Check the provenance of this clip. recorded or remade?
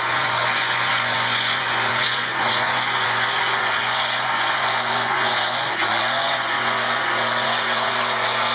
remade